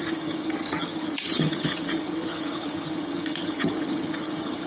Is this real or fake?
fake